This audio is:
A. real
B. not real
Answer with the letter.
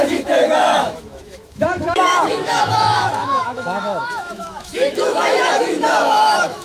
B